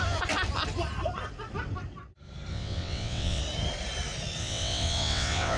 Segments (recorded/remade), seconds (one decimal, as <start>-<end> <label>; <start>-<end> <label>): 0.0-2.5 recorded; 2.5-3.4 remade; 3.4-4.4 recorded; 4.4-5.6 remade